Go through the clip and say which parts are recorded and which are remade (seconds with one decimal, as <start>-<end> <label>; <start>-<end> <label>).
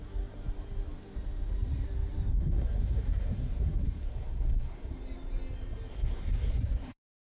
0.0-2.3 recorded; 2.3-5.0 remade; 5.0-5.9 recorded; 5.9-7.4 remade